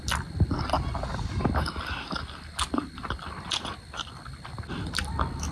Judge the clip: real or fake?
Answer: real